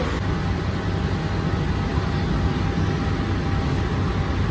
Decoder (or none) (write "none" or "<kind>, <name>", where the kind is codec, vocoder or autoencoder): none